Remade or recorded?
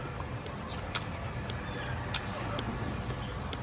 recorded